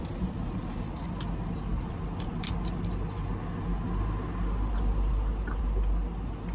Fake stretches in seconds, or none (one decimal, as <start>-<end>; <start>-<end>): none

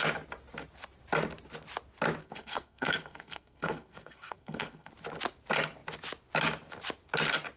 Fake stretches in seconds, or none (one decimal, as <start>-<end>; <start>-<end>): 2.2-4.9

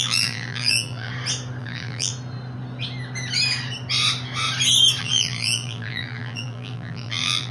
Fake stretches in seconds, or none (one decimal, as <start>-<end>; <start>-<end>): 0.0-1.1; 1.6-2.1; 5.0-7.5

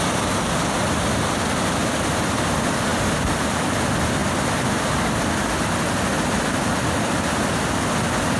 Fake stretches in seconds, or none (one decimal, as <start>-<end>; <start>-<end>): 2.9-3.7

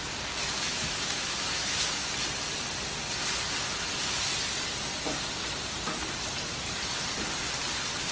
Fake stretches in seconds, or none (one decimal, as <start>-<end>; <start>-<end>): 0.7-2.1

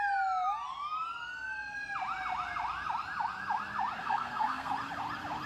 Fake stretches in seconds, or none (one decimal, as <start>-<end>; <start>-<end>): 4.0-4.7

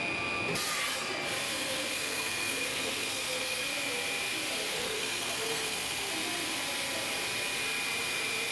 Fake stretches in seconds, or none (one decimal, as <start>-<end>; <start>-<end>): 1.5-3.6; 4.7-6.1

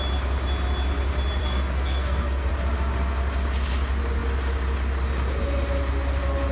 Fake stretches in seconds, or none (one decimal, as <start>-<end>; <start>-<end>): 1.4-2.5